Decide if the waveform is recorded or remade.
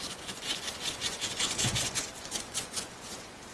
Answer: remade